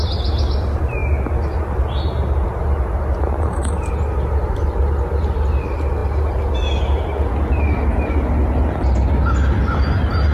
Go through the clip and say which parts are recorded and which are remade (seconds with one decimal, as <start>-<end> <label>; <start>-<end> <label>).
0.0-10.3 recorded